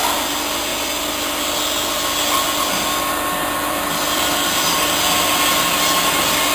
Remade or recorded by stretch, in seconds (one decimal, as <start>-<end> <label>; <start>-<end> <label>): 0.0-3.4 recorded; 3.4-5.0 remade; 5.0-6.5 recorded